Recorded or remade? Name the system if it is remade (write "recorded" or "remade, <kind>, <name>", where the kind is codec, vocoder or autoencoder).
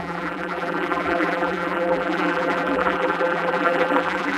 remade, vocoder, BigVGAN v2